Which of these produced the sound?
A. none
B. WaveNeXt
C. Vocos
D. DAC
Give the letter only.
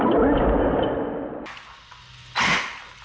A